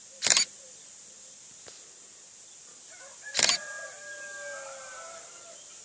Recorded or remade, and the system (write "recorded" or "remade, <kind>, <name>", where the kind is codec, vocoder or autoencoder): recorded